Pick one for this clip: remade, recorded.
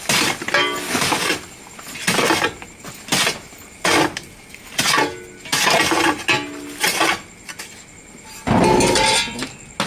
recorded